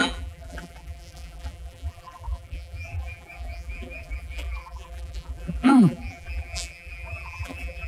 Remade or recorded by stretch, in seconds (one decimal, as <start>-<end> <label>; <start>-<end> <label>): 0.0-7.9 remade